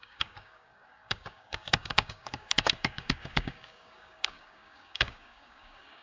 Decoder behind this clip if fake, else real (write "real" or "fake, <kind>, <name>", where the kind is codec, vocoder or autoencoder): fake, codec, DAC